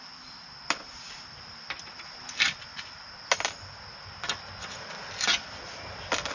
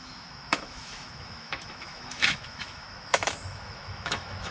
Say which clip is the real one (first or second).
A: first